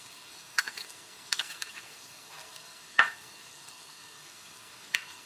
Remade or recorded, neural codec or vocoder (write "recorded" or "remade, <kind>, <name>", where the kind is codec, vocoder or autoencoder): remade, codec, SNAC